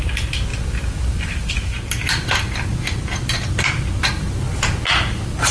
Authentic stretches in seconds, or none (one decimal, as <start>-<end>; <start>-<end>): 0.0-2.7; 4.1-5.5